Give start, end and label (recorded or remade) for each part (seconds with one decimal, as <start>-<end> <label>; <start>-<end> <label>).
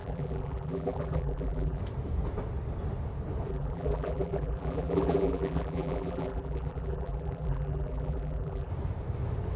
0.0-1.8 remade; 1.8-3.5 recorded; 3.5-8.7 remade; 8.7-9.6 recorded